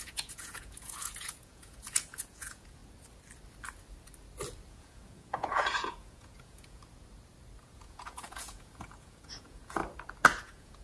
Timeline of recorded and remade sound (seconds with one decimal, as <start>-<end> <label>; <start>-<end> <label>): 0.0-2.8 remade; 2.8-4.7 recorded; 4.7-6.8 remade; 6.8-7.6 recorded; 7.6-9.8 remade; 9.8-10.4 recorded; 10.4-10.8 remade